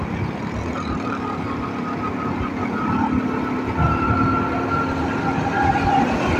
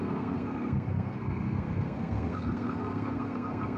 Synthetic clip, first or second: second